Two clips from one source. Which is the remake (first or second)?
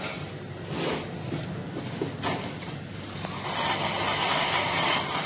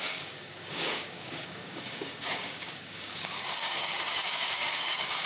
second